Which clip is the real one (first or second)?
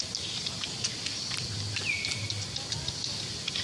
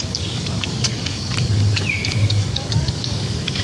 first